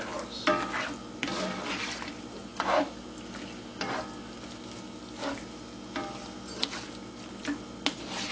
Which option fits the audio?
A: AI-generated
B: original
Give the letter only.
B